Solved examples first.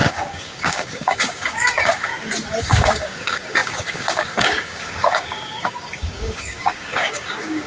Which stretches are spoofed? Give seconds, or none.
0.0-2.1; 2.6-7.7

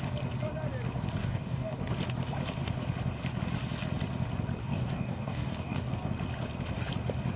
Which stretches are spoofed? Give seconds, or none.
1.2-1.8; 4.6-5.9

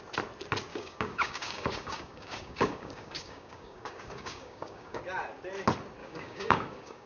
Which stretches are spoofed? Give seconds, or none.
0.7-5.0; 6.0-7.1